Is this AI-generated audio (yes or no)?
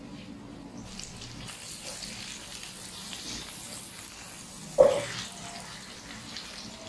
no